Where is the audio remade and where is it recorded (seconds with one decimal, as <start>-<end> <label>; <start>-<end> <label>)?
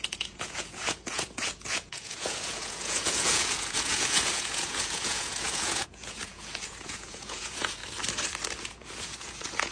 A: 0.0-7.8 remade; 7.8-8.6 recorded; 8.6-9.7 remade